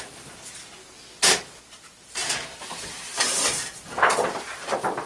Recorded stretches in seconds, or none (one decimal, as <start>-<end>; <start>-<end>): 0.0-5.1